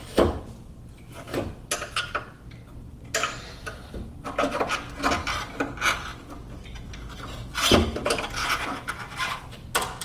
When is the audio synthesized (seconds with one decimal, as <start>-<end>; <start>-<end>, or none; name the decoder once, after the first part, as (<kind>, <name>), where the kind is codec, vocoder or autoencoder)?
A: 8.4-8.9 (vocoder, Vocos)

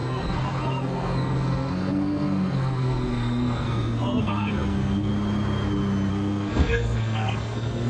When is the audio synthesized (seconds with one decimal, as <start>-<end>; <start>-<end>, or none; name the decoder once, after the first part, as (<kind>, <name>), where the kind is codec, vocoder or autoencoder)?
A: 0.0-5.1 (codec, SNAC); 6.1-7.9

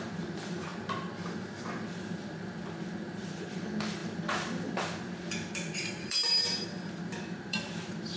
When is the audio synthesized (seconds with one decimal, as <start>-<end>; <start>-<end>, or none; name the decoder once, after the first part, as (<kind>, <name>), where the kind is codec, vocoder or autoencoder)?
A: 0.0-0.7 (vocoder, BigVGAN v2); 1.6-8.2

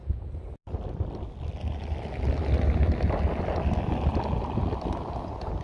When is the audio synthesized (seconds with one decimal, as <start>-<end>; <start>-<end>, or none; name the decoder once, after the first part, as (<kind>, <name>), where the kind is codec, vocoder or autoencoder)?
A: none

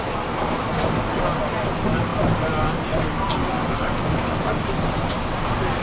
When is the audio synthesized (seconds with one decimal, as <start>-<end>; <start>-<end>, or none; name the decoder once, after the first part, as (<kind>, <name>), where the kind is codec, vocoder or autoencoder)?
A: none

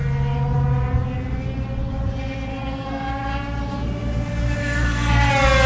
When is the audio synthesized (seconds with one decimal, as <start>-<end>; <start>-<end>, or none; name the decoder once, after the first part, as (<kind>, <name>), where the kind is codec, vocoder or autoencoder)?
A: 2.5-3.1 (codec, SNAC); 4.6-5.3

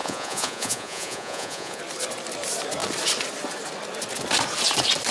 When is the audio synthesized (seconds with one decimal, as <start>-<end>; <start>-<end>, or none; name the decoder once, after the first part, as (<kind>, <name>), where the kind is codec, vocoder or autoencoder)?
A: 0.0-1.8 (vocoder, Vocos)

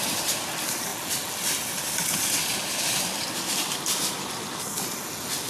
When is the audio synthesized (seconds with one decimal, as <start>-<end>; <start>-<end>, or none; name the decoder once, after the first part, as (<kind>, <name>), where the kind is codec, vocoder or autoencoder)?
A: none